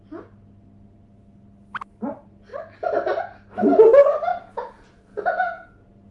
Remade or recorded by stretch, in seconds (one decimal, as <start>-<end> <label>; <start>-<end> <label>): 0.0-4.3 recorded; 4.3-6.1 remade